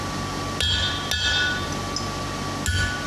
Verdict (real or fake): real